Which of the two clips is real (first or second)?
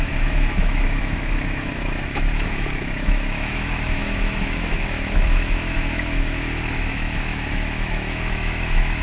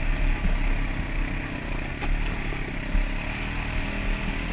second